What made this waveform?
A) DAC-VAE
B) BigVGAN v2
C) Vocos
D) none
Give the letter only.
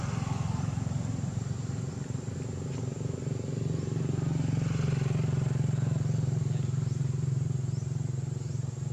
D